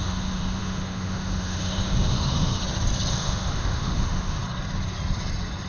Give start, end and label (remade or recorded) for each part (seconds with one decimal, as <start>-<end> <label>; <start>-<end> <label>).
0.0-2.6 remade; 2.6-3.1 recorded; 3.1-4.4 remade; 4.4-5.7 recorded